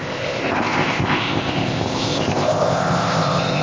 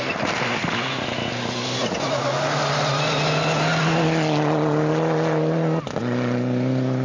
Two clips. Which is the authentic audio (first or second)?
second